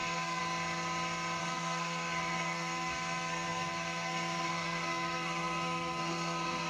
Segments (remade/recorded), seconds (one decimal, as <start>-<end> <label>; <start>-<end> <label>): 0.0-0.4 remade; 0.4-1.4 recorded; 1.4-6.7 remade